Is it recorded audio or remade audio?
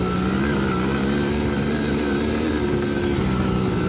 recorded